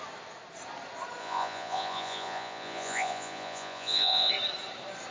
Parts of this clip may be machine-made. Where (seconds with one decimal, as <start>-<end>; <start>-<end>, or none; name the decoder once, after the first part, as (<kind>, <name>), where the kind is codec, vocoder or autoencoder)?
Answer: 1.2-4.3 (vocoder, Vocos)